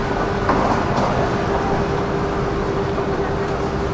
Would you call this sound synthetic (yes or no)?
no